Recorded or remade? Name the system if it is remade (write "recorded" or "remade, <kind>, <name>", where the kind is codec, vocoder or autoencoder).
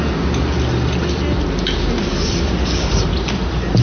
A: recorded